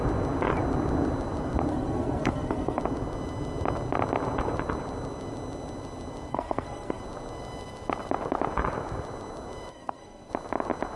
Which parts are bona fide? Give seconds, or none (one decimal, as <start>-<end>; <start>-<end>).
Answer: 0.0-1.7; 2.8-6.3; 7.0-9.7; 10.3-11.0